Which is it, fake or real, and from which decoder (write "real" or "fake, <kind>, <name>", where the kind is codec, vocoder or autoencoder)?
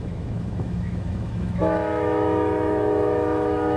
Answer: fake, autoencoder, DAC-VAE